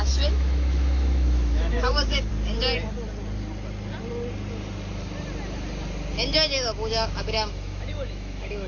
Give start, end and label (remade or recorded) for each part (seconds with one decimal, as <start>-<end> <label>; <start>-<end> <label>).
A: 0.0-2.3 remade; 2.3-6.9 recorded; 6.9-8.7 remade